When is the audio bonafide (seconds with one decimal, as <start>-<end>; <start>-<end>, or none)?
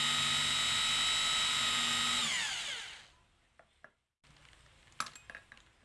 0.0-5.8